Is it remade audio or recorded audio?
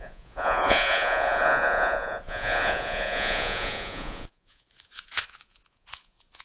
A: remade